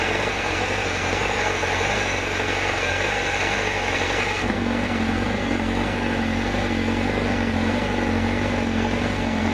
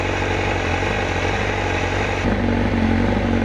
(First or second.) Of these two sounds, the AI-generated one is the first